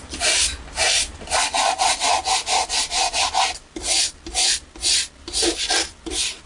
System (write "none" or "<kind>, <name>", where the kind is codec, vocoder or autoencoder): vocoder, BigVGAN v2